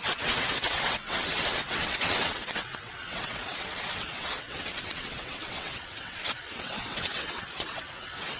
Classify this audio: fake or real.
fake